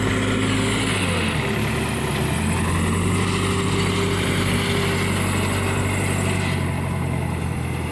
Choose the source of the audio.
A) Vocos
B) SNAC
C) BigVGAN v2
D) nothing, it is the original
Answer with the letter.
D